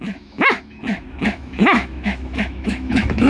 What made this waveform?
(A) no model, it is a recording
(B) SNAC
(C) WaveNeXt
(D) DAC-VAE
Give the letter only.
D